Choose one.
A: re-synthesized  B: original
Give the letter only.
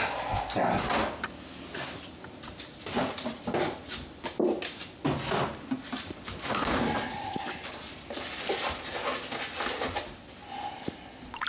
B